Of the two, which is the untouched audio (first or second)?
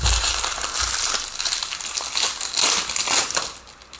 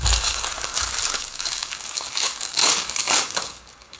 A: first